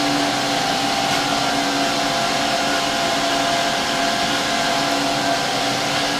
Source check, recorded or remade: recorded